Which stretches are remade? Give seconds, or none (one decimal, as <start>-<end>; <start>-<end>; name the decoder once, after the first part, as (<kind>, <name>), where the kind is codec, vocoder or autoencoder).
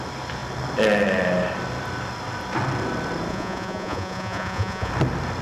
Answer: 3.3-4.9 (vocoder, Vocos)